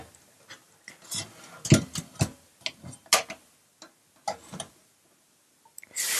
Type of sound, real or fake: real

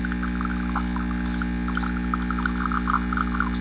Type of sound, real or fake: real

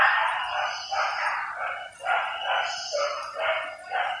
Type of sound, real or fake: real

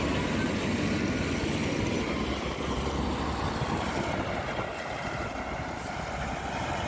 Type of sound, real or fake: real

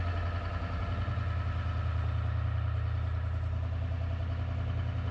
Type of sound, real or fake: real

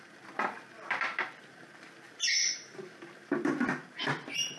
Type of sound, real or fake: fake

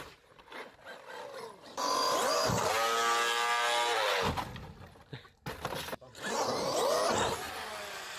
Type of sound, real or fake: real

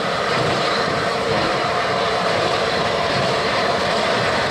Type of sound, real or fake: fake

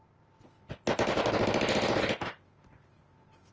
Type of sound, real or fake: real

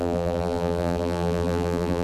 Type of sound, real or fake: fake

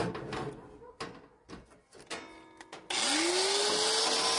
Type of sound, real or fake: real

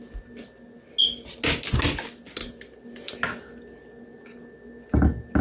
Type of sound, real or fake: real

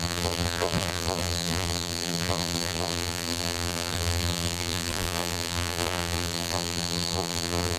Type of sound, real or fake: fake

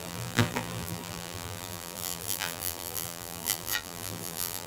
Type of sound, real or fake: fake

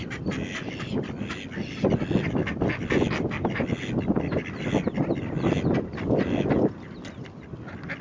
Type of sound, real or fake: real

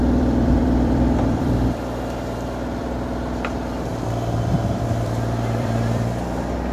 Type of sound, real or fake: fake